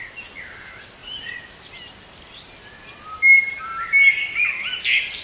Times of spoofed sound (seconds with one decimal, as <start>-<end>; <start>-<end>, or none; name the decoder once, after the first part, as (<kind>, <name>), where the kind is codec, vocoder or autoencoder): none